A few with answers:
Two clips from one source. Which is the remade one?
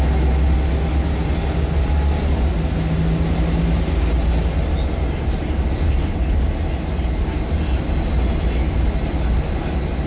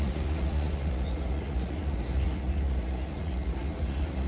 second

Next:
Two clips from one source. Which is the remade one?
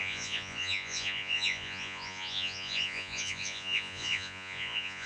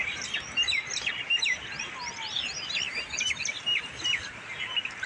first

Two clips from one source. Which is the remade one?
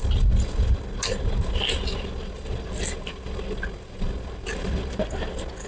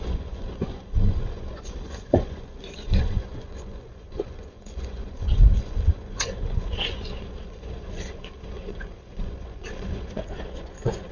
second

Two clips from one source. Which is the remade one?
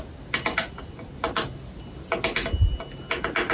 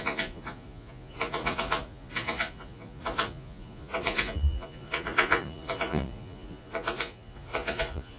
second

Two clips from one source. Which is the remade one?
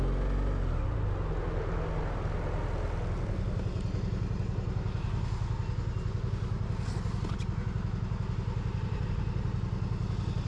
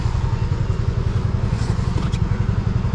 second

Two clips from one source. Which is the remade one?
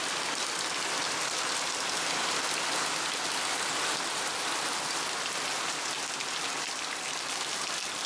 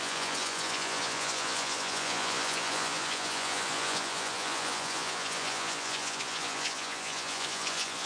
second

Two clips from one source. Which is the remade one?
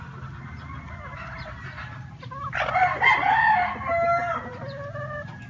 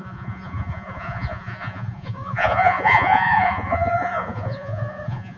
second